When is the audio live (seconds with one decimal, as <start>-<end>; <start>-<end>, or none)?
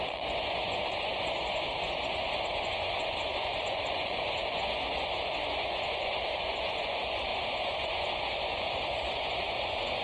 none